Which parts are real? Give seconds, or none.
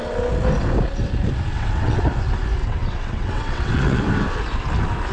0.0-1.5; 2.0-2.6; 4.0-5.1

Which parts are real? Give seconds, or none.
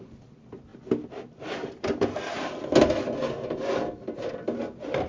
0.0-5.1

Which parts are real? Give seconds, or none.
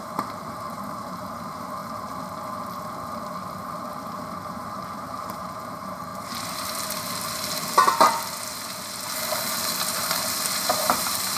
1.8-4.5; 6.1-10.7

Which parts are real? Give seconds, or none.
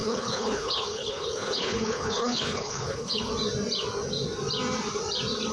3.3-5.5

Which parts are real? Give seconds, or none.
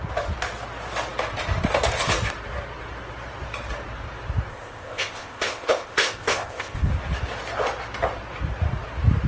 0.0-4.5; 6.9-9.3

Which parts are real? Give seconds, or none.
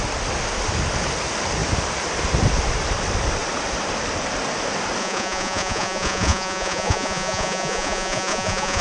0.0-5.0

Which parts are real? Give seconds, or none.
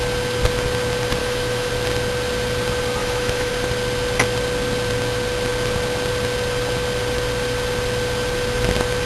0.0-1.2; 1.7-3.0; 3.5-9.1